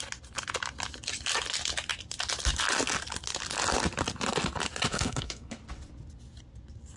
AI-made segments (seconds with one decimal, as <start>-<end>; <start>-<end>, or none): 4.9-5.6